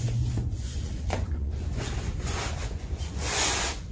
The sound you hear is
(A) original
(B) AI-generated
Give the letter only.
B